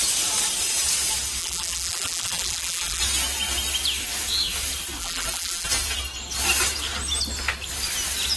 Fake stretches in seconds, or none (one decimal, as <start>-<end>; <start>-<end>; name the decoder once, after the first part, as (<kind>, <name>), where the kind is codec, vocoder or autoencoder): 1.4-3.0 (vocoder, BigVGAN v2); 5.0-5.7